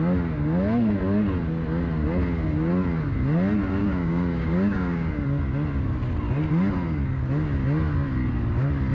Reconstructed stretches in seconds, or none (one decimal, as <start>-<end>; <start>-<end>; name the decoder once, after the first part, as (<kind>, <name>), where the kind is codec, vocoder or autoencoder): 3.8-5.1 (codec, DAC)